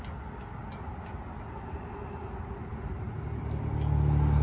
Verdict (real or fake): real